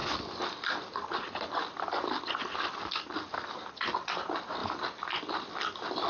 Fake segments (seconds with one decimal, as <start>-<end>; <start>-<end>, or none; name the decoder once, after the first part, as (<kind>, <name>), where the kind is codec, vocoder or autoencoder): none